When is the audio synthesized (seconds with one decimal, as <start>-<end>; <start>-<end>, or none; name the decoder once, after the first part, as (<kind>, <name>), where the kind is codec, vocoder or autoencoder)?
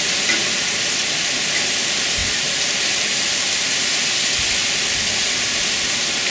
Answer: none